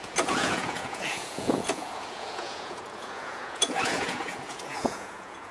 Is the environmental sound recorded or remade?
remade